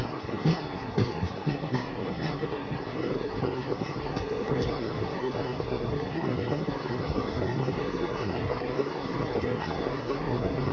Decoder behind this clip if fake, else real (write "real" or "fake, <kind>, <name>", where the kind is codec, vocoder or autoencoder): fake, codec, SNAC